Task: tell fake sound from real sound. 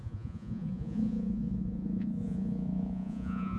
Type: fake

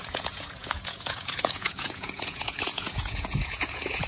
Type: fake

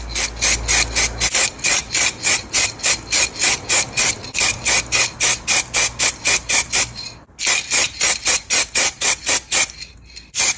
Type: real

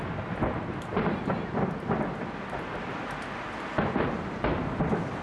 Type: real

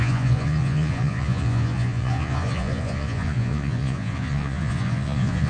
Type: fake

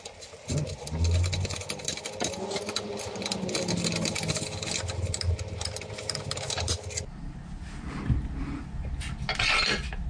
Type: real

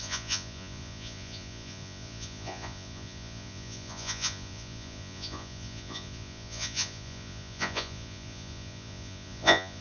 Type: fake